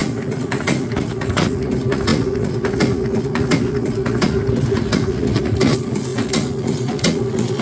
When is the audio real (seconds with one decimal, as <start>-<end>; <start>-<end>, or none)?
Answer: none